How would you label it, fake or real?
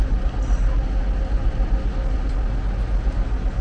real